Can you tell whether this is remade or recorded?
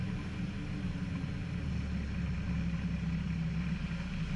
recorded